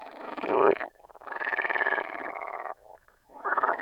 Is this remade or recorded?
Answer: remade